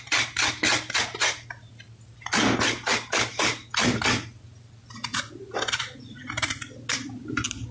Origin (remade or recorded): recorded